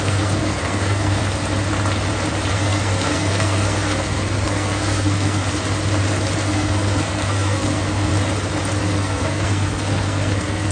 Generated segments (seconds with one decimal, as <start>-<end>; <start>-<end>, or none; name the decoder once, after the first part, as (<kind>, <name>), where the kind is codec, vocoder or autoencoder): 0.0-1.2 (codec, SNAC); 2.5-5.4; 6.4-8.1; 8.8-10.7